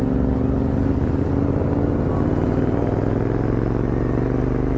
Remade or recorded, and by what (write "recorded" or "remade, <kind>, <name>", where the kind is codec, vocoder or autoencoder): recorded